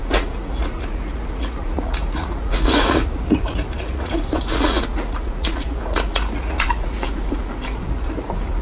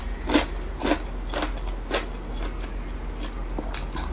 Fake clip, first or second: first